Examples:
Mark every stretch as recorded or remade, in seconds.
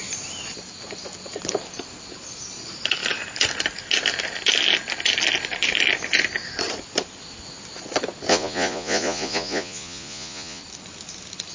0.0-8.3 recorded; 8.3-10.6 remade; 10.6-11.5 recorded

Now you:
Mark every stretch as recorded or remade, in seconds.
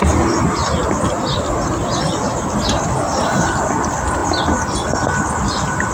0.0-5.9 recorded